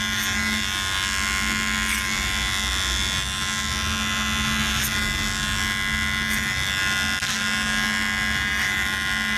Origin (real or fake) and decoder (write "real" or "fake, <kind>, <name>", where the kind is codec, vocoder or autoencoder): real